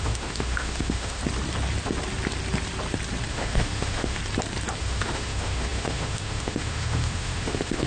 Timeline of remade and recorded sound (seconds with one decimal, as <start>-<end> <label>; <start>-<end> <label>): 0.0-1.2 remade; 1.2-3.3 recorded; 3.3-4.2 remade; 4.2-4.8 recorded; 4.8-7.9 remade